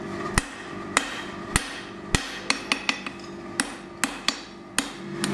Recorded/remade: recorded